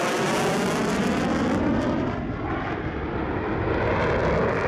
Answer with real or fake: real